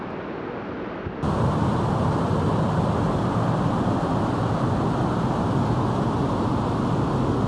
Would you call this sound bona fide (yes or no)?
yes